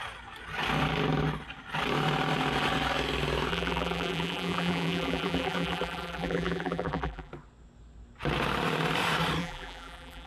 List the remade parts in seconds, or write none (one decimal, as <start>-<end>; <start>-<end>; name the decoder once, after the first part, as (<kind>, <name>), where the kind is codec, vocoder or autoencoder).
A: 3.5-7.3 (vocoder, BigVGAN v2); 9.4-10.3